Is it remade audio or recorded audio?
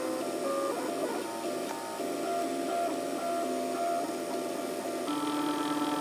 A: recorded